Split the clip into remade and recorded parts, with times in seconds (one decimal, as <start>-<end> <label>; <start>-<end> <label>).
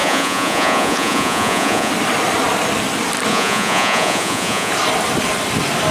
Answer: 0.0-1.9 remade; 1.9-3.3 recorded; 3.3-4.7 remade; 4.7-5.9 recorded